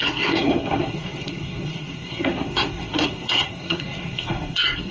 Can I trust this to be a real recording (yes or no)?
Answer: no